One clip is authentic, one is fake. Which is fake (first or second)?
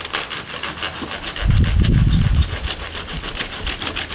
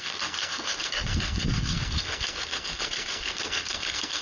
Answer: second